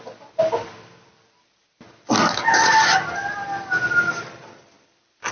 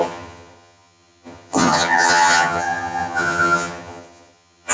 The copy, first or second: second